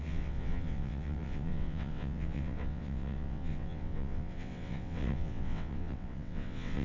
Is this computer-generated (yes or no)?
yes